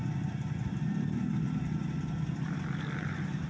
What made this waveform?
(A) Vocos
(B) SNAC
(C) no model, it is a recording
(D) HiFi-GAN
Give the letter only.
C